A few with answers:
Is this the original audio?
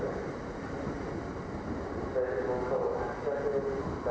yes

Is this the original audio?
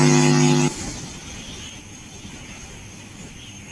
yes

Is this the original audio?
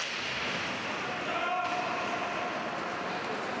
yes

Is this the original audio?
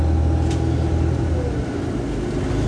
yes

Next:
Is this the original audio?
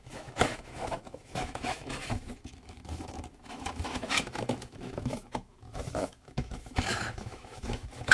no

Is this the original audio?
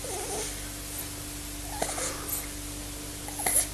yes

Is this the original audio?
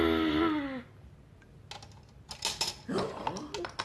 yes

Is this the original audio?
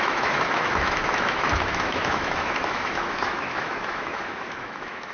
no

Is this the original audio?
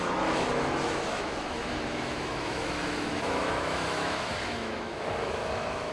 no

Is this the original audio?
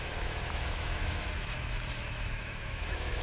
no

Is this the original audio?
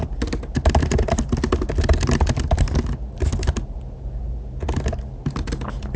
yes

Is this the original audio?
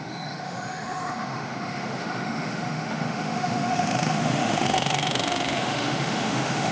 no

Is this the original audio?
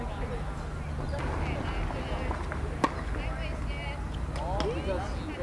yes